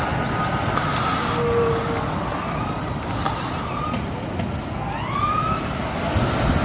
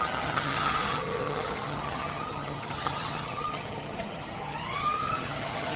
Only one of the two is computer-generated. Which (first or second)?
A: second